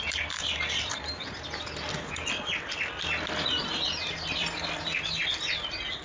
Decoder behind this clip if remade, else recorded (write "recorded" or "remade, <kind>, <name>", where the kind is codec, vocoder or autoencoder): recorded